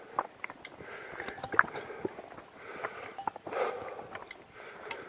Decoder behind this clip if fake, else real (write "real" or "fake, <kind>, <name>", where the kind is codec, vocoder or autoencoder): real